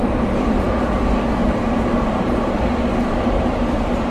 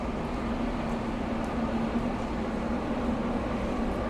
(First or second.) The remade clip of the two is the first